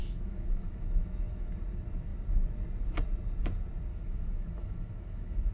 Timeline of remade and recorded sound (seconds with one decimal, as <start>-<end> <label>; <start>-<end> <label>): 0.0-1.5 remade; 1.5-3.9 recorded; 3.9-5.5 remade